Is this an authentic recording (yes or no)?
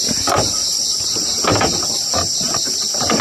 yes